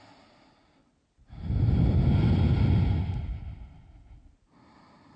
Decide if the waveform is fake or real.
real